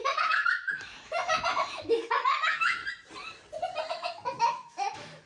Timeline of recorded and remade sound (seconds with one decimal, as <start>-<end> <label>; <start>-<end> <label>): 0.0-2.8 remade; 2.8-3.9 recorded; 3.9-5.3 remade